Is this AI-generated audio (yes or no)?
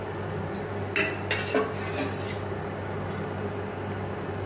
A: no